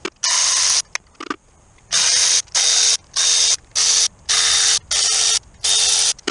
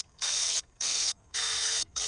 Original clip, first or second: first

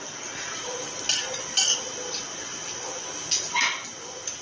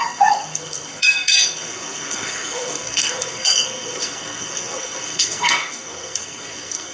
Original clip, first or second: first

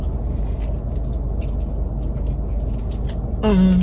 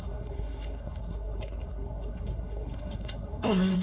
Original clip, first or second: first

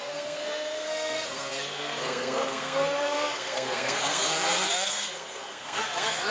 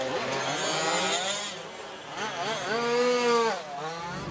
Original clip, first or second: second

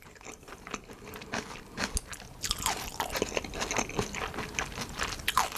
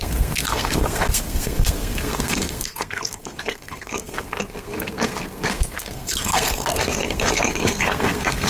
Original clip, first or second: first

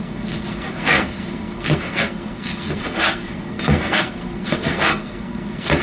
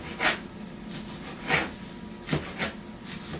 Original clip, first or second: second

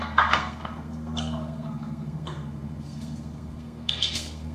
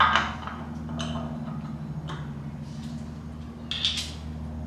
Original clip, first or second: second